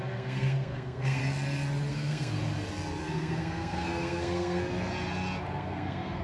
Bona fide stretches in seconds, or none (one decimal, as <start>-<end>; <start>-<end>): 1.2-1.9; 2.4-3.0; 4.9-5.5